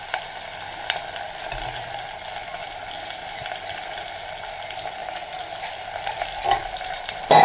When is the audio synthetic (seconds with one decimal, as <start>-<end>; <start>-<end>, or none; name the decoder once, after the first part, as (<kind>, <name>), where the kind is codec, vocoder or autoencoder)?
none